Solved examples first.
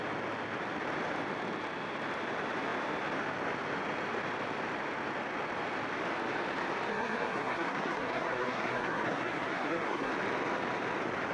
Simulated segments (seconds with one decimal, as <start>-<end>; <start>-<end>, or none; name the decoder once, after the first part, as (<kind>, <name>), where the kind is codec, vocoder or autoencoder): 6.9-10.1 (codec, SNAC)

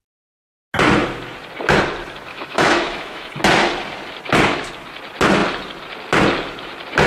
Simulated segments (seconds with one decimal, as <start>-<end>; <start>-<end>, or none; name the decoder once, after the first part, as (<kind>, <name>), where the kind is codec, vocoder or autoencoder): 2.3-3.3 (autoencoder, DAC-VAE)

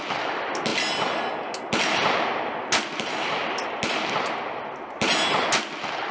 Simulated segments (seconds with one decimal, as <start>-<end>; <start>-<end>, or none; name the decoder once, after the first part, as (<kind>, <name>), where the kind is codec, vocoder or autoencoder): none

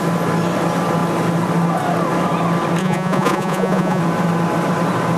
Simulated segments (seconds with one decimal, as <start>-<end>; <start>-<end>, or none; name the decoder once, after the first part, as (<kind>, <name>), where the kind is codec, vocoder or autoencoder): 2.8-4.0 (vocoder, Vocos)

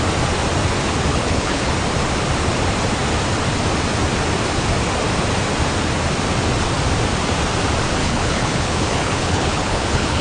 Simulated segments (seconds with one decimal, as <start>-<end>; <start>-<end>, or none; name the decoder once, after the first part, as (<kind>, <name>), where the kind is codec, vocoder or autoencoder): 1.1-1.7 (codec, HILCodec); 8.0-10.2